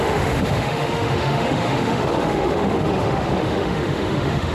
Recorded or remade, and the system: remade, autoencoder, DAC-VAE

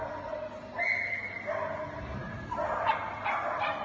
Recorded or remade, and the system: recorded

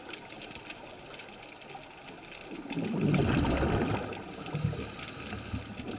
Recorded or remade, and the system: recorded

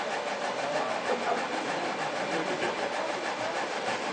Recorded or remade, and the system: recorded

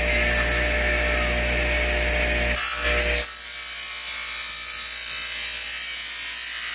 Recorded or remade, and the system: recorded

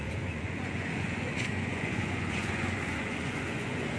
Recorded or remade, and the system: remade, vocoder, Vocos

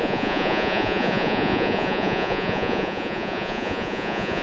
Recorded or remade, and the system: remade, vocoder, Vocos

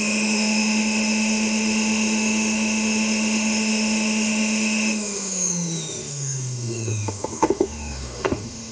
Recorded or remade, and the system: remade, autoencoder, DAC-VAE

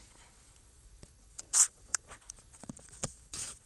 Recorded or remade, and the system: remade, vocoder, Vocos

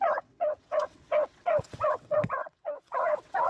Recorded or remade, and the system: remade, vocoder, WaveNeXt